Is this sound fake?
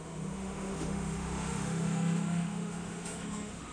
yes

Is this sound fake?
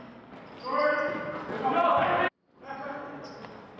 no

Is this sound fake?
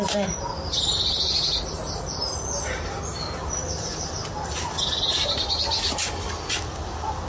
no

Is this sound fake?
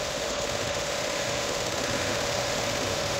yes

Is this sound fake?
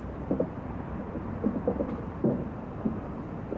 no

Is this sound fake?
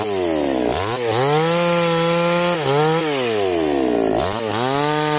no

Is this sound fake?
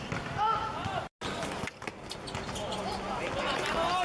no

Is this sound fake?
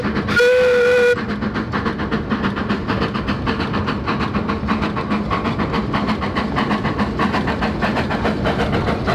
no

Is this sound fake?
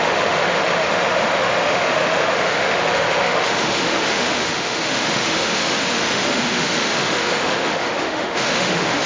yes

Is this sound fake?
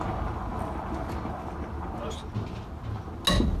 no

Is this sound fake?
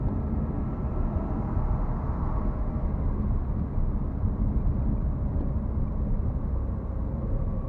no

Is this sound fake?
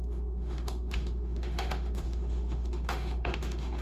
yes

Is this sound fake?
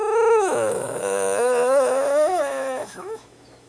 yes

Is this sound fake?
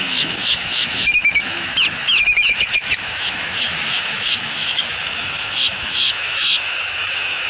yes